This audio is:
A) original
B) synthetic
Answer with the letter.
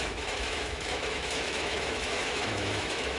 B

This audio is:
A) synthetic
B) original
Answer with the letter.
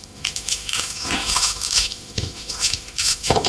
A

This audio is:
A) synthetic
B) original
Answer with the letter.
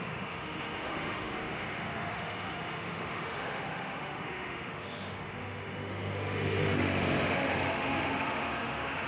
A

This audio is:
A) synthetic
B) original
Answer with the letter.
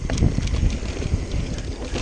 B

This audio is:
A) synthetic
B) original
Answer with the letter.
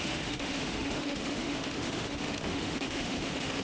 A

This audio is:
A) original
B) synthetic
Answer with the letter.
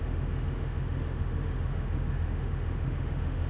B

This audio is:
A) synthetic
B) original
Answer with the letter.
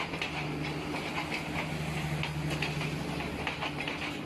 B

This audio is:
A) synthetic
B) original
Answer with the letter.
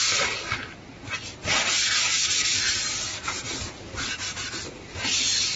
B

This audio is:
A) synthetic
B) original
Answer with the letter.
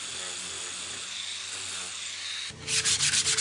B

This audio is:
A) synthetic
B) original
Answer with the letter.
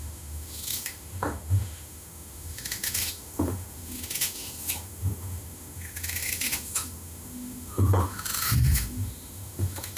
A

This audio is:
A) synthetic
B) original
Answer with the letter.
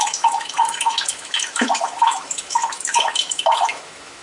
A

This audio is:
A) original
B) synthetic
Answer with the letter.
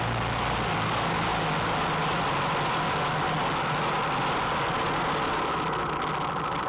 A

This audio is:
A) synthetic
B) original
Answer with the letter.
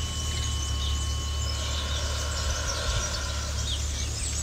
B